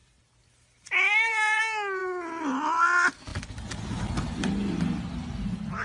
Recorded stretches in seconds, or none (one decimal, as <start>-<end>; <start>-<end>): 1.6-5.8